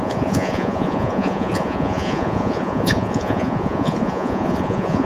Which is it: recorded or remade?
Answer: remade